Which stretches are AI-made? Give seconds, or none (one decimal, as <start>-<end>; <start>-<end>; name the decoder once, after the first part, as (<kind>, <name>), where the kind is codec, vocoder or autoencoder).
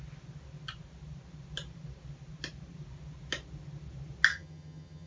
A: 4.3-5.1 (vocoder, HiFi-GAN)